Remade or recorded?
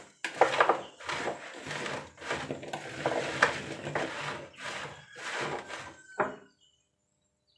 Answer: recorded